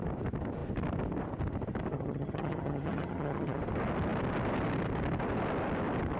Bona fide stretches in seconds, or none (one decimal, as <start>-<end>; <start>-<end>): 0.0-1.9; 3.6-6.2